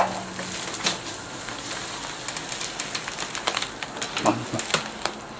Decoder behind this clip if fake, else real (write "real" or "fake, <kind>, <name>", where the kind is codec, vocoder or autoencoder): real